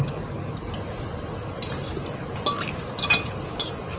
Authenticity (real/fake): real